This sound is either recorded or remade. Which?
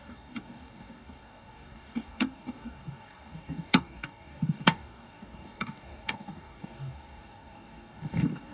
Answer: remade